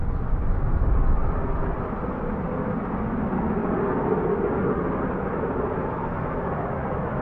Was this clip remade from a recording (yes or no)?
no